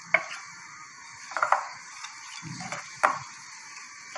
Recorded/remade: recorded